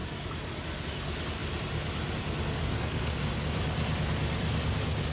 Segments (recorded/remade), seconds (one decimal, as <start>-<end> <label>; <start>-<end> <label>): 0.0-2.6 recorded; 2.6-3.2 remade; 3.2-5.1 recorded